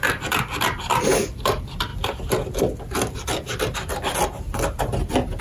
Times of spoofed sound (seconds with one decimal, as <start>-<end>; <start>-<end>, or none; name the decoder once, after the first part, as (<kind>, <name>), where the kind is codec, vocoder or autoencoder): 0.0-1.9 (vocoder, BigVGAN v2); 2.8-5.4